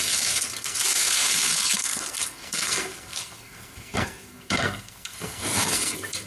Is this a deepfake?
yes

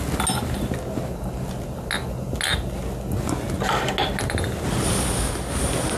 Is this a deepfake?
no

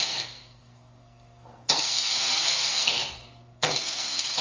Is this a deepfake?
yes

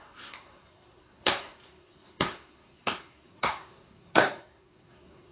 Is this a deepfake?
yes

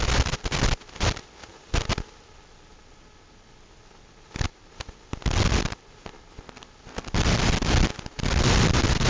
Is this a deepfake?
no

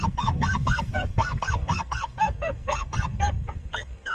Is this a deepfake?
yes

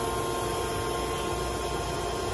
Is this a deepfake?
no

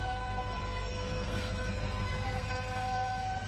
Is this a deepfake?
yes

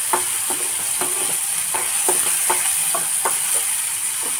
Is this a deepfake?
no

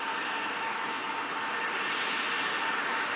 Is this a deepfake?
no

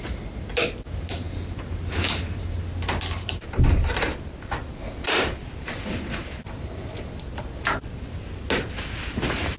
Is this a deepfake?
no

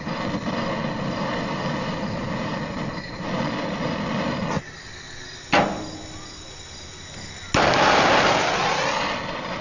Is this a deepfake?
no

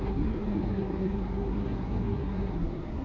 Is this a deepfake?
yes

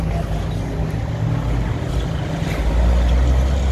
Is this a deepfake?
no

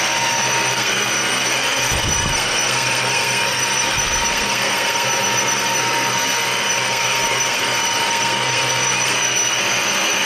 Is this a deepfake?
yes